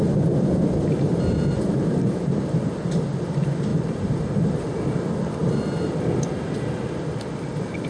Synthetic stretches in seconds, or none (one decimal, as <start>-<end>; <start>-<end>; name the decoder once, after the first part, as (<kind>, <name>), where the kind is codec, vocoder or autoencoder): 1.1-2.4 (vocoder, BigVGAN v2); 3.7-4.6; 5.4-6.0